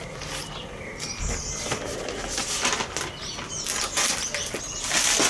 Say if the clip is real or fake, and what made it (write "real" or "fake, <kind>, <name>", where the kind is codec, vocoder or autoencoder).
real